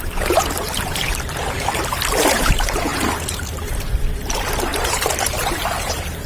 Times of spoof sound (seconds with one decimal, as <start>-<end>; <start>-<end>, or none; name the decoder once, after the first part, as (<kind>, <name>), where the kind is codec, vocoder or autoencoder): 0.0-1.1 (vocoder, BigVGAN v2); 2.3-6.3